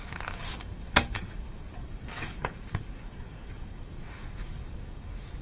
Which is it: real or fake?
fake